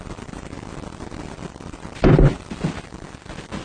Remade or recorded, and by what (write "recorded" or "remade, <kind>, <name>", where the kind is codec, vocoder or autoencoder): remade, vocoder, BigVGAN v2